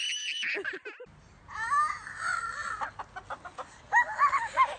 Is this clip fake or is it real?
real